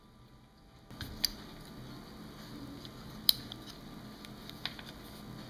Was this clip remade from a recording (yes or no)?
no